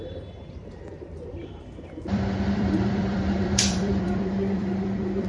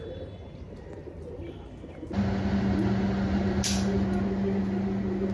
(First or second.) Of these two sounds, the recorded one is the second